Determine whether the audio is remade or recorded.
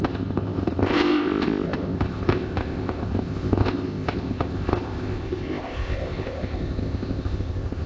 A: remade